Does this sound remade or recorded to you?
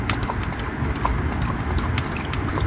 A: recorded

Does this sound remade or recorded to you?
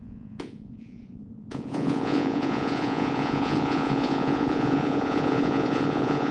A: remade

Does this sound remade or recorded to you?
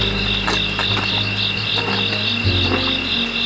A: recorded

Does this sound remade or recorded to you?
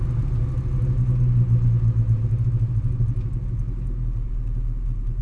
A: recorded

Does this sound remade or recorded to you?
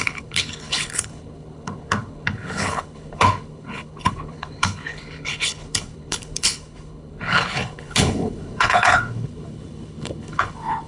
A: remade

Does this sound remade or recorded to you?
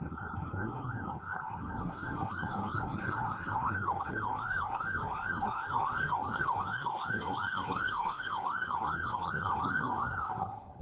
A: remade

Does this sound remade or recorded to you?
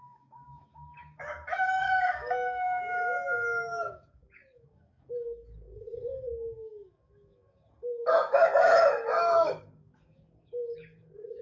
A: remade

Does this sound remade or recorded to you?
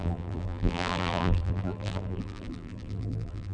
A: remade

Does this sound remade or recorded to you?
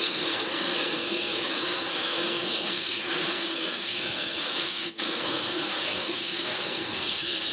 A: remade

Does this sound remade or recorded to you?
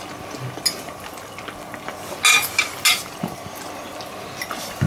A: recorded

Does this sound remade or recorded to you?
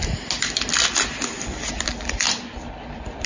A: recorded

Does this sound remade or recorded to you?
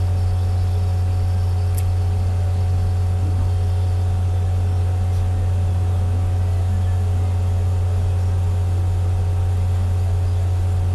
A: recorded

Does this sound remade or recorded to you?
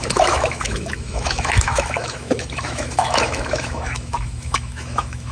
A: remade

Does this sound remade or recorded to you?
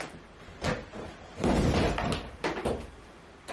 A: remade